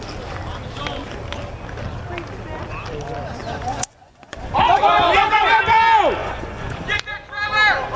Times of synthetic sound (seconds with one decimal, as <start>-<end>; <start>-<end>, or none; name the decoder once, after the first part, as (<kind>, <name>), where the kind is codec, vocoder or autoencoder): 3.4-5.6 (vocoder, Vocos); 6.2-7.0